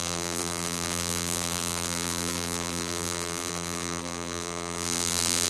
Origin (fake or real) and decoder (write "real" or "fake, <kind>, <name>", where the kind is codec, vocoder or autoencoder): fake, vocoder, BigVGAN v2